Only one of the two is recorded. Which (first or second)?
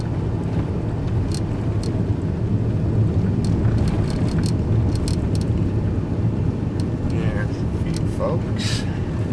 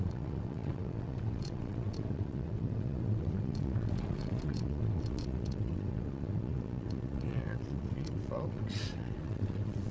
first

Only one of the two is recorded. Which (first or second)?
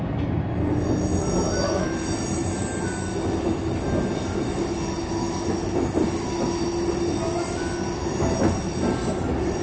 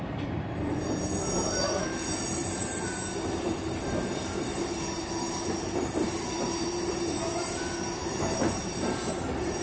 first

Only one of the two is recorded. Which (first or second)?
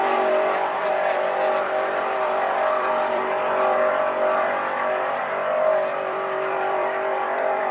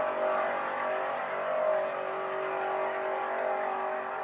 second